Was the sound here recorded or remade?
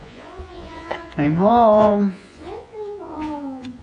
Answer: remade